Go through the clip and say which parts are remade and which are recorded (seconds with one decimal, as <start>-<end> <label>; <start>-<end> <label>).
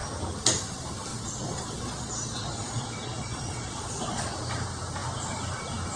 0.0-1.1 recorded; 1.1-4.3 remade; 4.3-6.0 recorded